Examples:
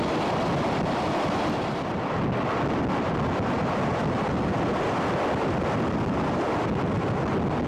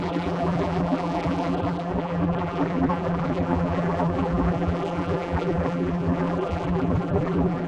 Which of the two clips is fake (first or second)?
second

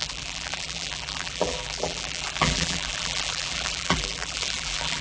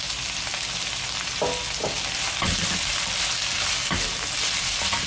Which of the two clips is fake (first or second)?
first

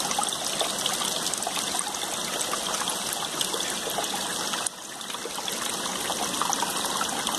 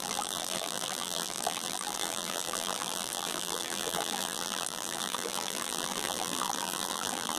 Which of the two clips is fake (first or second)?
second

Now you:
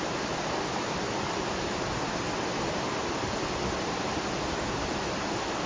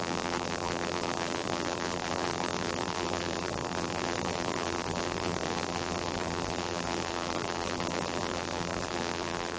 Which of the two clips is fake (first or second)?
second